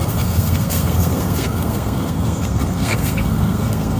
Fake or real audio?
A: fake